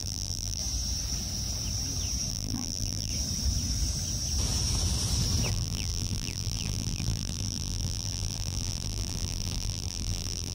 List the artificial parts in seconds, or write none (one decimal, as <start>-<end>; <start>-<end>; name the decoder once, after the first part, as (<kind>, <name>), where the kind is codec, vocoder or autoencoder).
0.0-0.6 (vocoder, BigVGAN v2); 2.3-3.1; 5.5-10.5